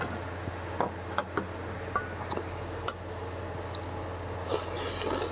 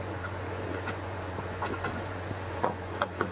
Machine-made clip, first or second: second